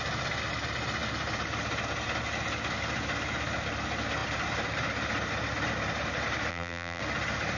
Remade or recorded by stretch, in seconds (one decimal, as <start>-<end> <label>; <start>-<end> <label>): 0.0-6.5 recorded; 6.5-7.0 remade; 7.0-7.6 recorded

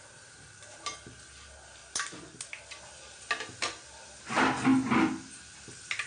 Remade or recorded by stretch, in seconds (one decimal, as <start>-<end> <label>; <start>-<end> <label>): 0.0-6.1 recorded

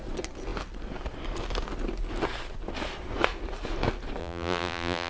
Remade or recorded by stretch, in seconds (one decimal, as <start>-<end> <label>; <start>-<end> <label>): 0.0-4.2 recorded; 4.2-5.1 remade

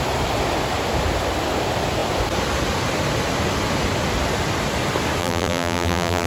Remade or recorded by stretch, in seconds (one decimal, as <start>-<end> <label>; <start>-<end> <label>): 0.0-5.2 recorded; 5.2-6.3 remade

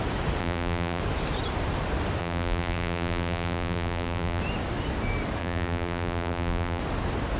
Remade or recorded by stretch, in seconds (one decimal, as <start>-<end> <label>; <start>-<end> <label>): 0.0-0.4 recorded; 0.4-1.0 remade; 1.0-2.2 recorded; 2.2-4.4 remade; 4.4-5.4 recorded; 5.4-6.8 remade; 6.8-7.4 recorded

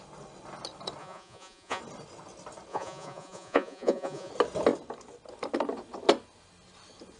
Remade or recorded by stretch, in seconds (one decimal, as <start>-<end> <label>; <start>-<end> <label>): 0.0-1.0 recorded; 1.0-1.8 remade; 1.8-2.7 recorded; 2.7-4.3 remade; 4.3-7.2 recorded

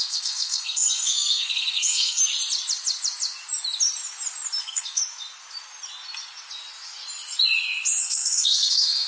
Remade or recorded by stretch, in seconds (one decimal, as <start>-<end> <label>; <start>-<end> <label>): 0.0-2.2 remade; 2.2-4.6 recorded; 4.6-5.0 remade; 5.0-8.0 recorded; 8.0-9.1 remade